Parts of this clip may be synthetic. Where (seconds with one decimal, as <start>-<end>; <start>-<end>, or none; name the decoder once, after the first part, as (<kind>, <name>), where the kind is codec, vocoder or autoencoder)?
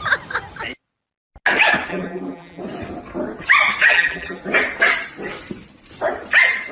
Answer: 1.9-2.6 (vocoder, BigVGAN v2); 3.9-4.4